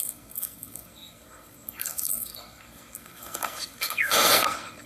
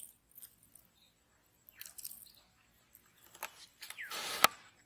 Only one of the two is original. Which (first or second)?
second